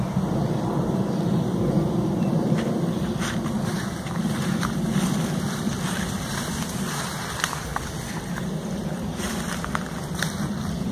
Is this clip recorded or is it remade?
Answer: remade